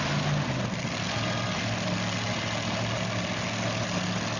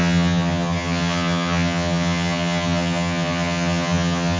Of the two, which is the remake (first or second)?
second